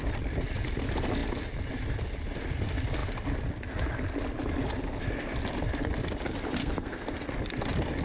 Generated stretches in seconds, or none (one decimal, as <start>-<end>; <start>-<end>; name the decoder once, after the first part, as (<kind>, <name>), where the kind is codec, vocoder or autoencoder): 6.6-7.4 (codec, SNAC)